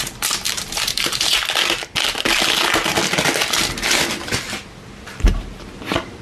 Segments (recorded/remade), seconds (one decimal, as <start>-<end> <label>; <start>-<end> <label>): 0.0-1.4 remade; 1.4-5.1 recorded; 5.1-6.2 remade